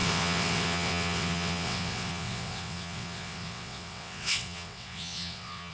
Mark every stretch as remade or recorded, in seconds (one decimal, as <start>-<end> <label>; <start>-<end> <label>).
0.0-5.7 remade